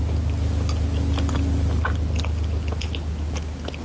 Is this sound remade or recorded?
recorded